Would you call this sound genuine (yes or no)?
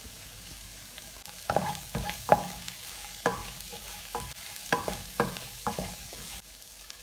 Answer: no